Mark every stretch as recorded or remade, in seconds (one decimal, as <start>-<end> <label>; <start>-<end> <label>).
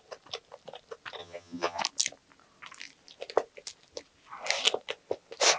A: 0.0-1.2 recorded; 1.2-1.8 remade; 1.8-5.6 recorded